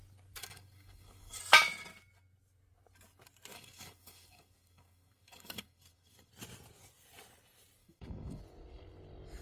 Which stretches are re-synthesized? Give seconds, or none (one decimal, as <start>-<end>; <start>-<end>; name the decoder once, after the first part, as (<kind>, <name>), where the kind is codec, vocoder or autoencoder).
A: 0.4-1.4 (codec, DAC); 3.5-6.3; 7.8-8.4